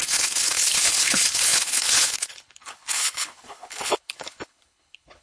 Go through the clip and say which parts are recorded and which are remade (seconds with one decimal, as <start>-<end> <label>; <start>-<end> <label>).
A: 0.0-5.2 remade